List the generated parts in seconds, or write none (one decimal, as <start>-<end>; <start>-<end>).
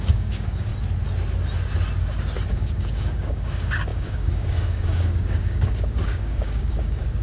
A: 0.0-0.7; 2.5-7.2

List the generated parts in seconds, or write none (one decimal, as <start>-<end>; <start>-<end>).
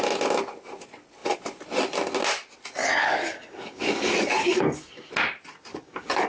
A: 2.8-5.1; 5.7-6.3